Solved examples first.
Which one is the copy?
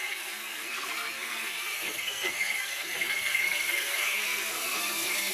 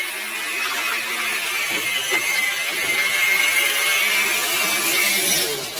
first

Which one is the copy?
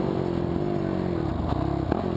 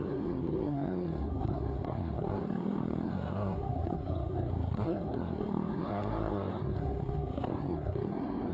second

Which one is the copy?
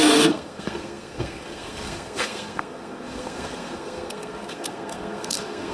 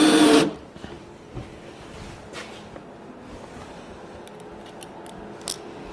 first